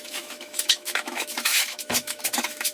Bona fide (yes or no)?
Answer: no